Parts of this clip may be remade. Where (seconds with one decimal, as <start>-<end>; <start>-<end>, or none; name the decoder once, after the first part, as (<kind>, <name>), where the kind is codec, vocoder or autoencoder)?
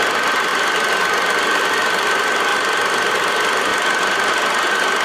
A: none